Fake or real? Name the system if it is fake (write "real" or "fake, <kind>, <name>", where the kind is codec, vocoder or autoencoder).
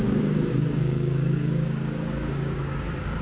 fake, codec, DAC